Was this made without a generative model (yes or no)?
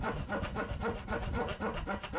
yes